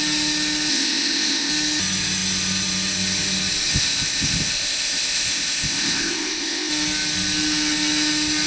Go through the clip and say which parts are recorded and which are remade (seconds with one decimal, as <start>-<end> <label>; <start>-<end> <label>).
0.0-0.7 recorded; 0.7-1.5 remade; 1.5-3.7 recorded; 3.7-6.7 remade; 6.7-8.5 recorded